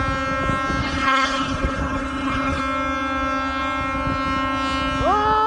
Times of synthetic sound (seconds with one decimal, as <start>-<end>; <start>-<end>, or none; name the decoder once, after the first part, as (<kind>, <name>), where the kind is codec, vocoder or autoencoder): 0.8-2.6 (codec, HILCodec)